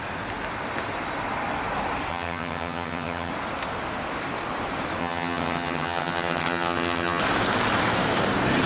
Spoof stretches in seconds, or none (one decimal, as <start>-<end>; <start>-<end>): 2.1-3.3; 5.0-7.2